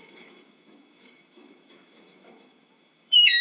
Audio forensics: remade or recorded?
remade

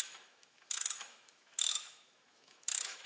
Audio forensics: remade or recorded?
remade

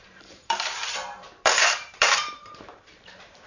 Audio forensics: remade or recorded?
remade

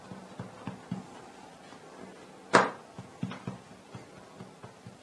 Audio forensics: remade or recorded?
recorded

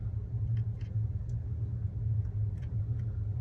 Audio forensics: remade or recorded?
recorded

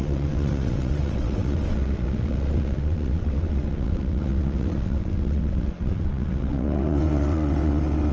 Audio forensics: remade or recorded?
remade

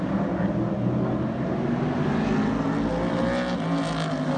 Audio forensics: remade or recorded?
recorded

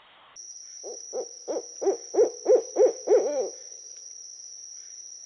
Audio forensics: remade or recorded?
recorded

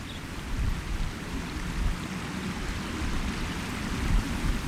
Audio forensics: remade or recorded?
recorded